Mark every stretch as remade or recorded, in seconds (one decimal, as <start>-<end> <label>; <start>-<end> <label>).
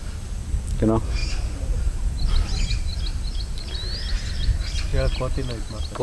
0.0-6.0 recorded